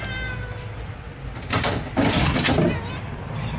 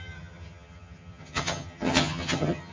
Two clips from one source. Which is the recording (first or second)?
first